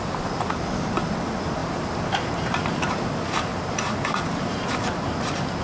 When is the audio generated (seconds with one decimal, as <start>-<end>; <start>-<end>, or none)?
1.6-2.9; 3.5-4.0; 4.5-5.6